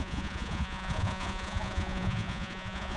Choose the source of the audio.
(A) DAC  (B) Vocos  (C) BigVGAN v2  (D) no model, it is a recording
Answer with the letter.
B